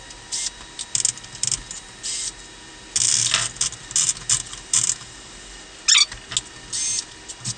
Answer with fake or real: real